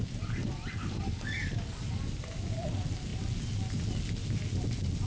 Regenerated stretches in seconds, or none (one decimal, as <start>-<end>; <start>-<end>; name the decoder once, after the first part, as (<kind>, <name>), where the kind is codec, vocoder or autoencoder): 0.8-1.9 (codec, DAC)

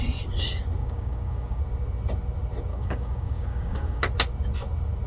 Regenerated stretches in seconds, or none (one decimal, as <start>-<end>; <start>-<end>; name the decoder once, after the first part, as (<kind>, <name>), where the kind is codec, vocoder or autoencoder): 0.8-1.6 (codec, DAC); 2.7-4.0

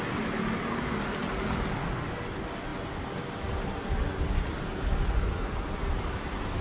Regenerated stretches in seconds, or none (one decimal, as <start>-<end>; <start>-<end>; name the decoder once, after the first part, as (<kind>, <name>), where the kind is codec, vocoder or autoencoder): none

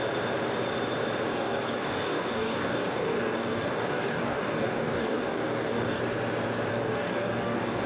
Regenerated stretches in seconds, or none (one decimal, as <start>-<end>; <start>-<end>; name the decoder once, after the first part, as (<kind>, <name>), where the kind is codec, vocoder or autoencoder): 1.3-6.0 (codec, DAC); 6.7-7.9

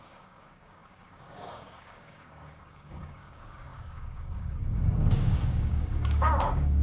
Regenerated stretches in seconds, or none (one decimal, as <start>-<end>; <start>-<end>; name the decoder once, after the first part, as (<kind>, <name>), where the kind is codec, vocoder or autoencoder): 0.0-6.8 (codec, DAC)

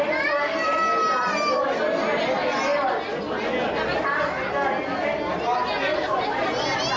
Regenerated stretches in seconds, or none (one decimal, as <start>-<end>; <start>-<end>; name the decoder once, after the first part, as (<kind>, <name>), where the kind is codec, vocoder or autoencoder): none